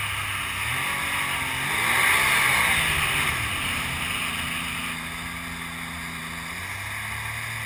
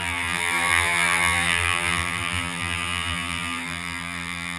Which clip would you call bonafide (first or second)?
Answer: first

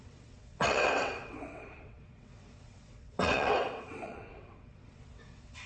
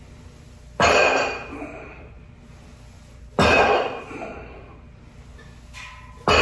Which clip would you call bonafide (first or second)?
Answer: second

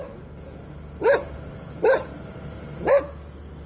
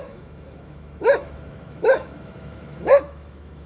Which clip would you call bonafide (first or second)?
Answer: first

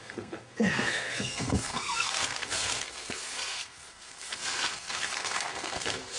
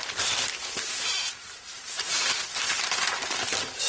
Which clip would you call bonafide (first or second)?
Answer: second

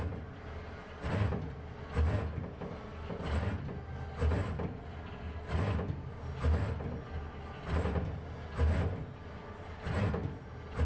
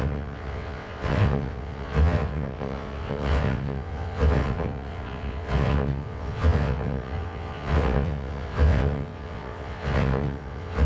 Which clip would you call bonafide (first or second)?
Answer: first